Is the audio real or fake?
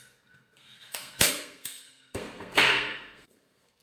fake